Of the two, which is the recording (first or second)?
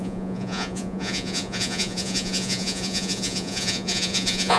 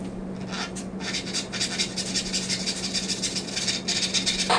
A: second